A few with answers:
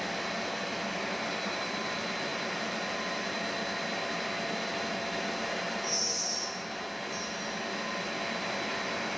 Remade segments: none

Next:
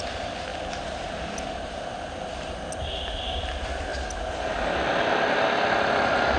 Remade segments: 0.0-0.5; 1.7-3.9

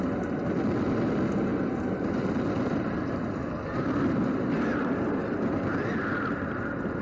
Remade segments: 1.5-5.2